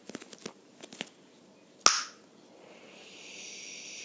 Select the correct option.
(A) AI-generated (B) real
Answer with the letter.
B